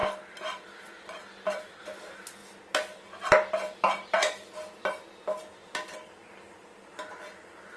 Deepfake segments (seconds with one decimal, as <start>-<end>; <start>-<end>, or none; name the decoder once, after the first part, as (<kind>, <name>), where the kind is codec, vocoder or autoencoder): none